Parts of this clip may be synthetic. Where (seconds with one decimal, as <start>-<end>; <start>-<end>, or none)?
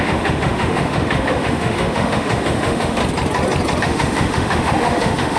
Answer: 0.0-3.0; 3.8-5.4